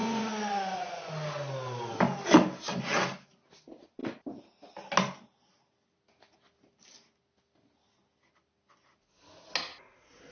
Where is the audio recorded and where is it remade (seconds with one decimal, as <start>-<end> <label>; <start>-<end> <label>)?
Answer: 0.0-1.1 remade; 1.1-10.3 recorded